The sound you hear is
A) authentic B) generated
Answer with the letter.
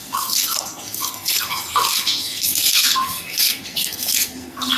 B